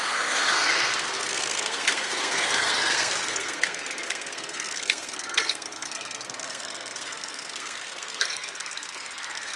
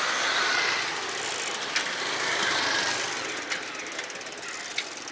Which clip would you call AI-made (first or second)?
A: first